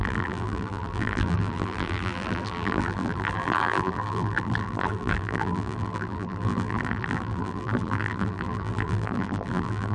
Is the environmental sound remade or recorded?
remade